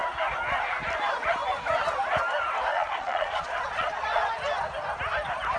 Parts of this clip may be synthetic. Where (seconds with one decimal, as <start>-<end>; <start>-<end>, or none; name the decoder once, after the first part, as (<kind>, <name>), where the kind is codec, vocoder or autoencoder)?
2.7-4.3 (vocoder, Vocos)